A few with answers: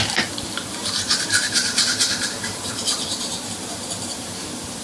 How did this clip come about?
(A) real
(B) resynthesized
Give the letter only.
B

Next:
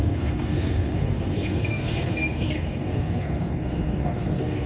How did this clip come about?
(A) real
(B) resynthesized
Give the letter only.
B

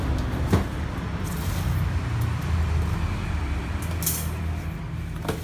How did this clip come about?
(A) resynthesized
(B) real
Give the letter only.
B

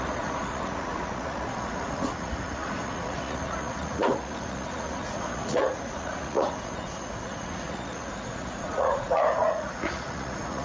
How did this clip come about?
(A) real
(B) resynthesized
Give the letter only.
B